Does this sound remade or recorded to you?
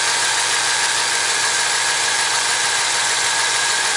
remade